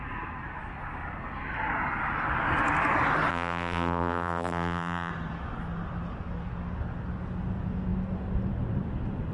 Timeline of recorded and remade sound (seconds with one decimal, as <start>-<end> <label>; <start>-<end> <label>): 0.0-3.3 recorded; 3.3-5.1 remade; 5.1-9.3 recorded